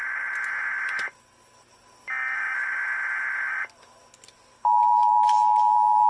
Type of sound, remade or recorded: recorded